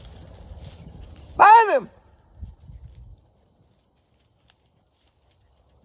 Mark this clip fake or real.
real